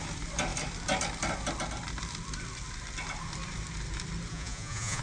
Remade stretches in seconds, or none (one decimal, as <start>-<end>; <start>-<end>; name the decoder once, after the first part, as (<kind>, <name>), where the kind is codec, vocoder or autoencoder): 4.3-5.0 (vocoder, Vocos)